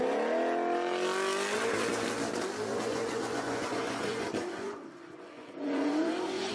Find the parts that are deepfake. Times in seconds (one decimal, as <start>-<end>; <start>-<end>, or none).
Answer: 2.7-6.5